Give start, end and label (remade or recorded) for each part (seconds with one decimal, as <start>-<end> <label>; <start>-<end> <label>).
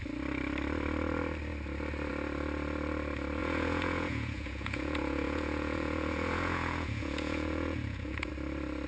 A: 0.0-3.4 recorded; 3.4-8.3 remade; 8.3-8.9 recorded